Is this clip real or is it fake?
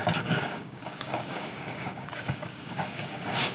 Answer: fake